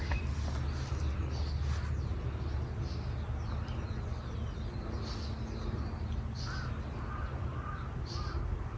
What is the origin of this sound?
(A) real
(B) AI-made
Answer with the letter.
A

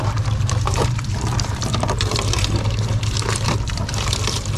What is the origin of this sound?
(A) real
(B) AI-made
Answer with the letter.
B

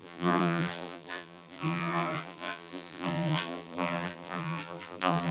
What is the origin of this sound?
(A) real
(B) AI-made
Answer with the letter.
B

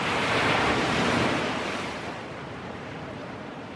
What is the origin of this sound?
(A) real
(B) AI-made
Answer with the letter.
B